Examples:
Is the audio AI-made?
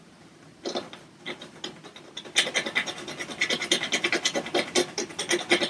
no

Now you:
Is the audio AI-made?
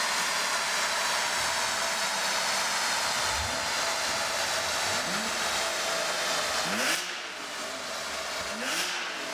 no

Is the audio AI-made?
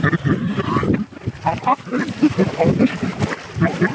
no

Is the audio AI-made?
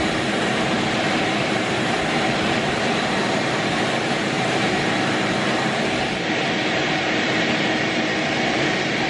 yes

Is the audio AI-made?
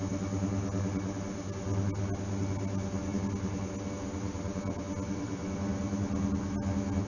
no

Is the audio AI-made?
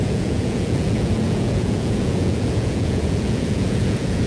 yes